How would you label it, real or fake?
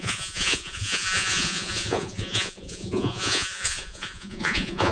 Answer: fake